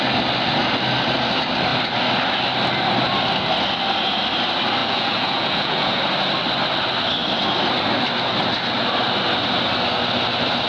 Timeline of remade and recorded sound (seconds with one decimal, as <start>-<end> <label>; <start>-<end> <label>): 0.0-4.8 recorded; 4.8-6.0 remade; 6.0-10.7 recorded